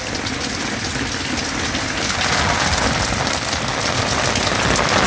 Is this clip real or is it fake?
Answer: real